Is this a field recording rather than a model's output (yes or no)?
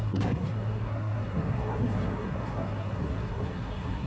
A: no